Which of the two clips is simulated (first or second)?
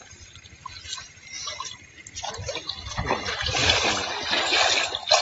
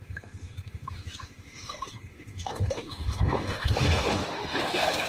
second